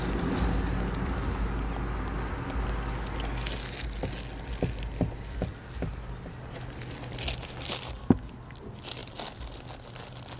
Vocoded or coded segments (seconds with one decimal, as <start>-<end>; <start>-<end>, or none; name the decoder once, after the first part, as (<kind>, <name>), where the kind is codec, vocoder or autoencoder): none